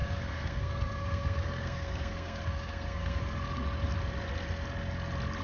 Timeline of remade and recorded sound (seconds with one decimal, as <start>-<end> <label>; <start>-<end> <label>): 0.0-3.2 remade; 3.2-5.4 recorded